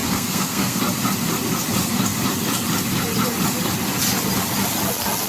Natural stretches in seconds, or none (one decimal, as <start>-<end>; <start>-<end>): 0.8-5.3